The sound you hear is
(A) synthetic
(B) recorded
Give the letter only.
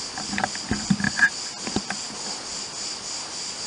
B